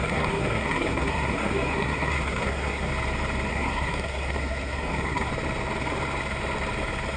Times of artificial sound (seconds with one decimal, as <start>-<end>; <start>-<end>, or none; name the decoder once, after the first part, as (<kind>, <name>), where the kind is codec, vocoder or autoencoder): 0.0-2.9 (codec, SNAC); 3.5-5.3